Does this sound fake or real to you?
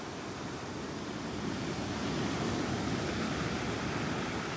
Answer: real